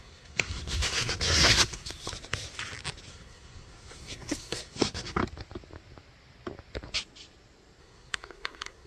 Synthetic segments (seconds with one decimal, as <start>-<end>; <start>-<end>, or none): 0.0-2.1; 3.1-5.2; 7.8-8.9